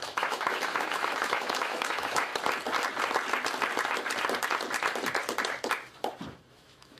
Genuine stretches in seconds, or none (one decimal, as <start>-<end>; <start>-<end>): 2.3-6.5